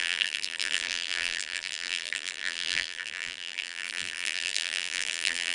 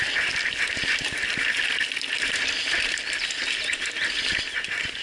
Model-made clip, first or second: first